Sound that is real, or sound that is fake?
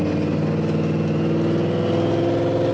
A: real